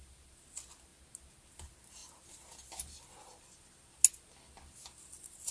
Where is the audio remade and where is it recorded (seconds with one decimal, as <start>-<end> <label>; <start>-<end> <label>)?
0.0-5.5 recorded